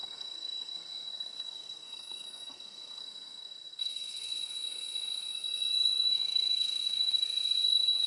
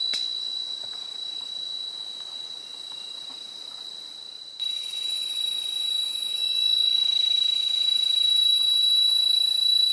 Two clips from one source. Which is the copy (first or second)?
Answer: first